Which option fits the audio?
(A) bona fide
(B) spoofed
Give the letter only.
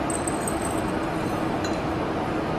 A